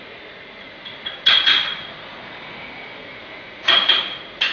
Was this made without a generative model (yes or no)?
no